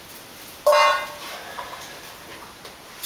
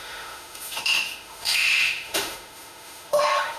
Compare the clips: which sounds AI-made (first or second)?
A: second